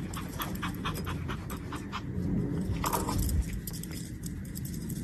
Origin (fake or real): real